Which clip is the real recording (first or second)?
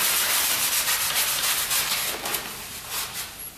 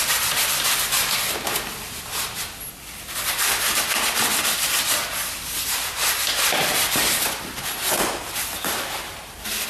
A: first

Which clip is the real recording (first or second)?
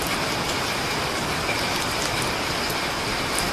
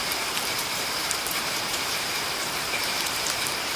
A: first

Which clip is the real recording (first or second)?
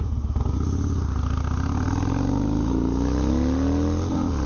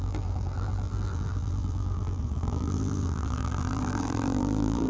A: first